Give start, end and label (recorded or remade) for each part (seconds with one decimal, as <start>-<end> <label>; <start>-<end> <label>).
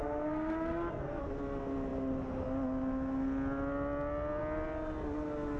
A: 0.0-1.2 remade; 1.2-5.6 recorded